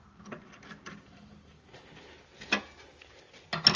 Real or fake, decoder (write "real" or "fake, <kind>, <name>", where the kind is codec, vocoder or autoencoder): real